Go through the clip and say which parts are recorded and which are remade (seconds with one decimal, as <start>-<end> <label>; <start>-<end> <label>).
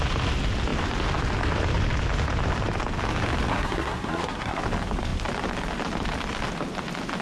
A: 0.0-3.5 recorded; 3.5-4.6 remade; 4.6-7.2 recorded